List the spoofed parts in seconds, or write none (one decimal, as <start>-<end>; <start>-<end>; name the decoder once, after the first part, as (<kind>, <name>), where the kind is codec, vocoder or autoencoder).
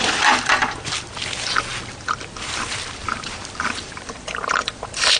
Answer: 0.0-5.2 (vocoder, BigVGAN v2)